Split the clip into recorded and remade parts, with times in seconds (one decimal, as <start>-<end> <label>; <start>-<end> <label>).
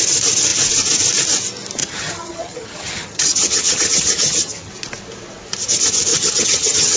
0.0-1.8 recorded; 1.8-4.7 remade; 4.7-6.1 recorded; 6.1-7.0 remade